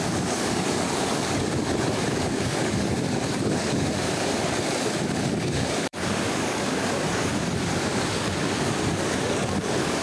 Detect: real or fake fake